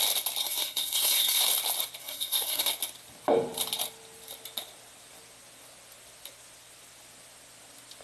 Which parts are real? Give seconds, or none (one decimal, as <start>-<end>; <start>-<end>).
0.0-0.4; 1.4-2.0; 2.7-8.0